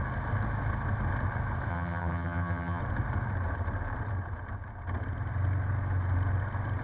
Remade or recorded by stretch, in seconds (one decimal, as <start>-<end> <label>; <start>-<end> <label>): 0.0-1.7 recorded; 1.7-2.8 remade; 2.8-6.8 recorded